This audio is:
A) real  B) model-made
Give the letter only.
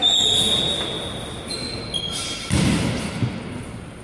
A